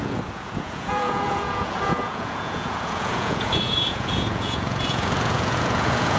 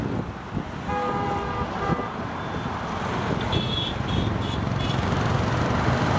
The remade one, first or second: first